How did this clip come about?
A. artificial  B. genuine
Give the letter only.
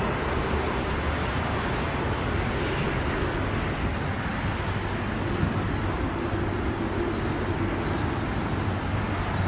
B